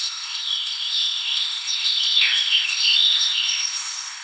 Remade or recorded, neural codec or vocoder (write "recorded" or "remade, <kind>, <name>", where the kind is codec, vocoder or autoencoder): remade, codec, ZipCodec